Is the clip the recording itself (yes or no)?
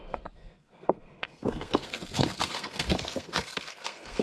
no